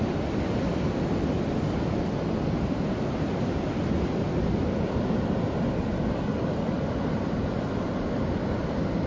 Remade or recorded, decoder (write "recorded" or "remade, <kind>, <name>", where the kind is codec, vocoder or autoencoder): recorded